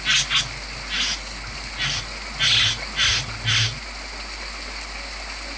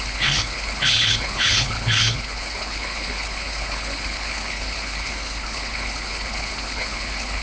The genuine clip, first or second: first